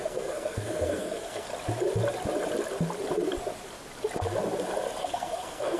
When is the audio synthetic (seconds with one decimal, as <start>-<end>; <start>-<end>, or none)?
0.0-1.5; 5.0-5.8